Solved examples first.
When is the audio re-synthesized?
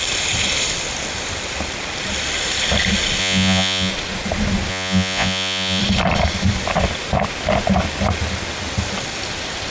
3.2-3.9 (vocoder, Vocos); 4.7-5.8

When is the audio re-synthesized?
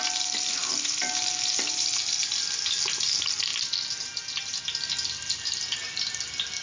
none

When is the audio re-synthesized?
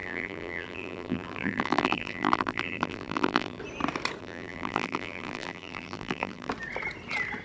0.0-3.6 (vocoder, BigVGAN v2); 4.2-6.5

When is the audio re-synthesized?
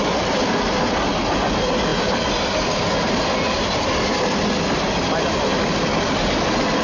none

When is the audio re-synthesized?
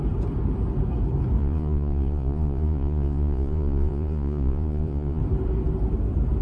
1.4-5.2 (vocoder, Vocos)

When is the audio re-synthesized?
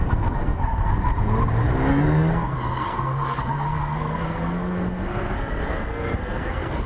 0.0-1.1 (codec, SNAC); 1.9-6.9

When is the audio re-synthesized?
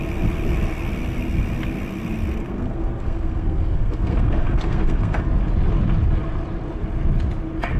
2.4-5.2 (codec, SNAC)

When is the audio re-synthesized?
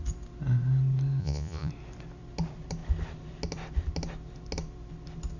1.2-1.7 (vocoder, Vocos)